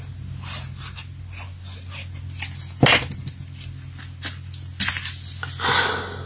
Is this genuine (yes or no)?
yes